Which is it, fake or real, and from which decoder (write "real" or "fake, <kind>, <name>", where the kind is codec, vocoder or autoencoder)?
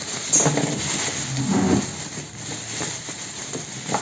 real